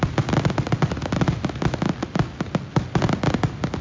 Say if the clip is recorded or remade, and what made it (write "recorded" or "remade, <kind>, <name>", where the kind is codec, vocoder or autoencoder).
recorded